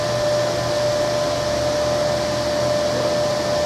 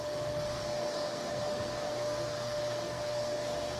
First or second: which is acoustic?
first